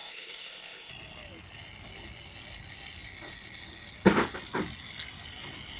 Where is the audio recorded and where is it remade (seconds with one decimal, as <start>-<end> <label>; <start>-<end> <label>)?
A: 0.0-0.9 remade; 0.9-5.8 recorded